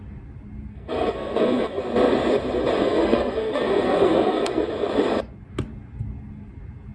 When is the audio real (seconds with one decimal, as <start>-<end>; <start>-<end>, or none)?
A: 0.0-0.7; 1.8-2.8; 4.7-6.9